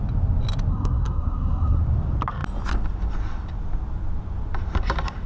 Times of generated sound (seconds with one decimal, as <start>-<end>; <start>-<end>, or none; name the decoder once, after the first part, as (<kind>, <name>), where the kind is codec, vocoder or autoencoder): 0.7-1.8 (codec, SNAC)